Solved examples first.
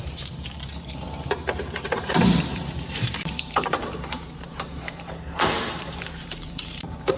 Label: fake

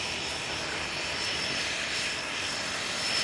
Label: fake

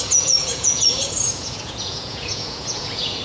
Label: fake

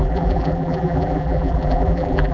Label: fake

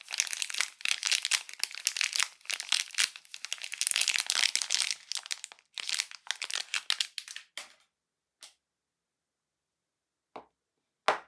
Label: real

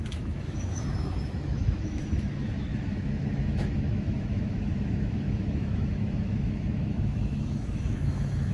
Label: fake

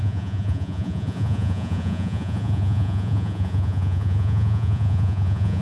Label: fake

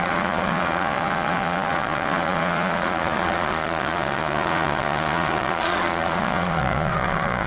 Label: fake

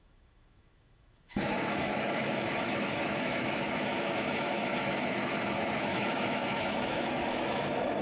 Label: fake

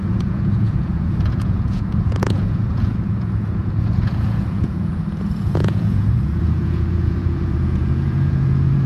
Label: fake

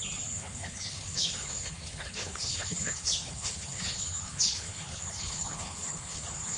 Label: fake